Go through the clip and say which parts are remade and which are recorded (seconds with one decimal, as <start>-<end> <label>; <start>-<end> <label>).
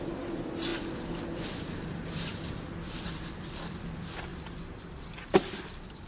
0.0-6.1 remade